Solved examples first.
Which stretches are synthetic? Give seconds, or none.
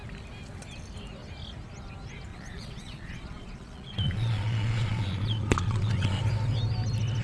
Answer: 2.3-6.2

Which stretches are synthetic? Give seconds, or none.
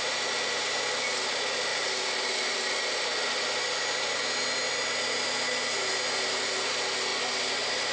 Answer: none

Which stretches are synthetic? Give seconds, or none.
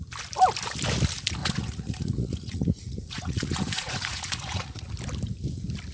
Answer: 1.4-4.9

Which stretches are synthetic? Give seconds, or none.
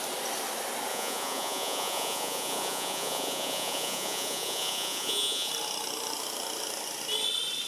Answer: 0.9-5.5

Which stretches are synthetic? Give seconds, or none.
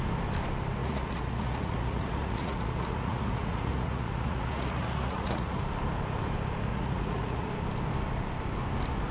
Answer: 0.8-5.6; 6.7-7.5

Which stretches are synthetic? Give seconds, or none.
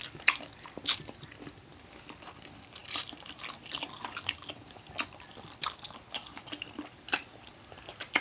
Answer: none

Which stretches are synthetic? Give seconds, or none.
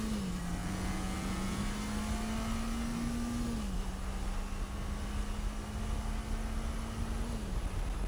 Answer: 0.6-1.6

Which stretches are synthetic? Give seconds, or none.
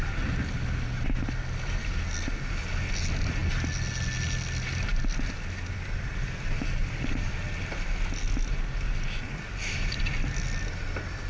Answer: none